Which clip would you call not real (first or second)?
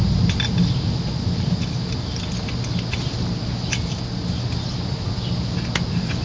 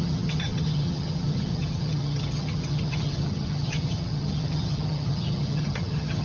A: second